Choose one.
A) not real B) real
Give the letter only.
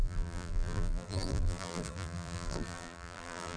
A